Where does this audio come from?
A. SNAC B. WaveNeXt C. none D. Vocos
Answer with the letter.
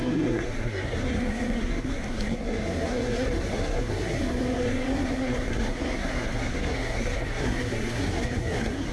A